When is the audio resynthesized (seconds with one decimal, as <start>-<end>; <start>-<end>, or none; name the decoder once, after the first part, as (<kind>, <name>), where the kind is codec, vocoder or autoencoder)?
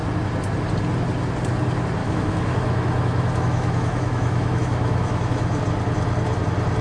2.0-5.6 (autoencoder, DAC-VAE)